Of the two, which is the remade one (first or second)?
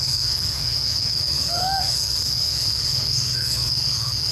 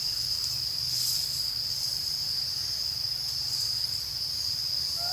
first